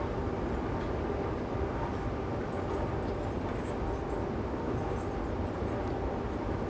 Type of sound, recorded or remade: recorded